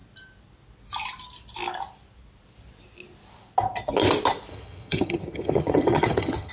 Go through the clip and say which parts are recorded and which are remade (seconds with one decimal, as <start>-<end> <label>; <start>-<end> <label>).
0.0-4.5 recorded; 4.5-6.5 remade